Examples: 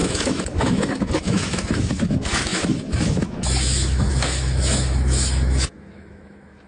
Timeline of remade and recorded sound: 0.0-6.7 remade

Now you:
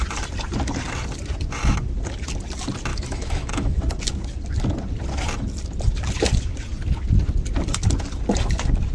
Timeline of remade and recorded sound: 0.0-2.9 recorded; 2.9-3.8 remade; 3.8-8.9 recorded